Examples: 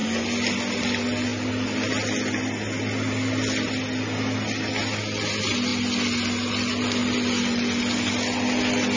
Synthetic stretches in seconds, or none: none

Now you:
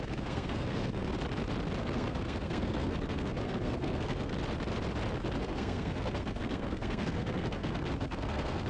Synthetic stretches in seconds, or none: 0.0-1.1 (codec, SNAC); 1.8-4.3; 5.4-8.7

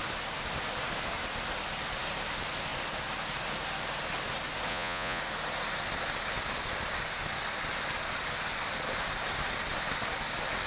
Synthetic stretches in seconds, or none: 4.7-5.2 (vocoder, Vocos)

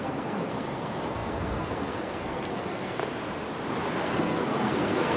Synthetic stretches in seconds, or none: 0.0-3.0 (codec, SNAC); 4.0-5.2

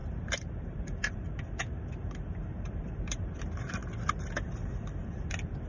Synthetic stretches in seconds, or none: 0.0-3.4 (vocoder, BigVGAN v2)

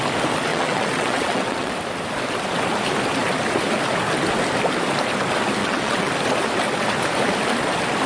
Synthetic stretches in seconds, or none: 0.5-1.7 (vocoder, WaveNeXt); 5.6-6.1

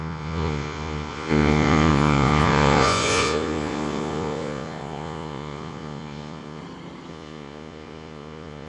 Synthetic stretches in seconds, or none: 0.0-6.6 (vocoder, Vocos); 7.1-8.7

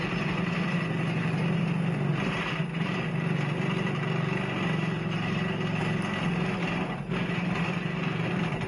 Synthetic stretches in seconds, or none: none